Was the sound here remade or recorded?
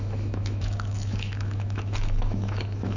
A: remade